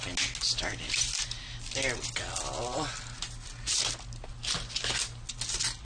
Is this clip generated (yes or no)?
no